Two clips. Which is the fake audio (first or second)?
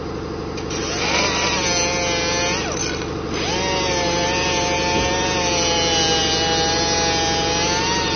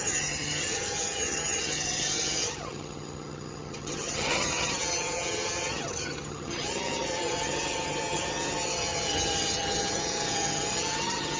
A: second